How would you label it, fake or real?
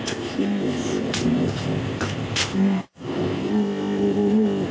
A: fake